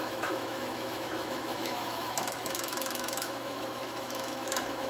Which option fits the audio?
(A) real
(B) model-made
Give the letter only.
B